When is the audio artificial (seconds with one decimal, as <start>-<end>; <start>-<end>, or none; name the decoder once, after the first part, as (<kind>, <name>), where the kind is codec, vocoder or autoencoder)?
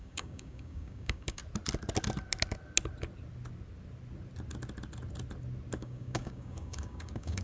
0.0-1.4 (codec, DAC); 5.8-7.4